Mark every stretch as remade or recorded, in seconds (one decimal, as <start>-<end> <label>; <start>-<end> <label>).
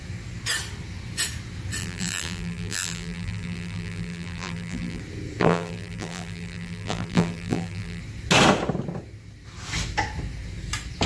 0.0-1.8 recorded; 1.8-5.0 remade; 5.0-5.4 recorded; 5.4-8.0 remade; 8.0-11.1 recorded